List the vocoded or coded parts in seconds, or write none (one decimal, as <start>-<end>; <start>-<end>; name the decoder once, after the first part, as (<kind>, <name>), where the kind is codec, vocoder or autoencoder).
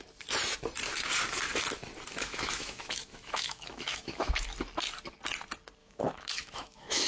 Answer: 2.2-4.3 (autoencoder, DAC-VAE); 5.8-7.1